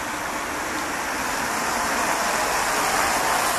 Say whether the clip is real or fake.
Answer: real